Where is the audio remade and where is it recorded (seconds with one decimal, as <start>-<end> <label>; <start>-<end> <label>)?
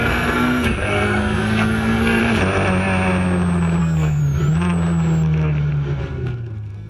0.0-2.2 remade; 2.2-3.8 recorded; 3.8-4.2 remade; 4.2-6.0 recorded; 6.0-6.9 remade